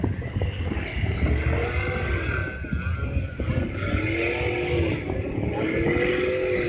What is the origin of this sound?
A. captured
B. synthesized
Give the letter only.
A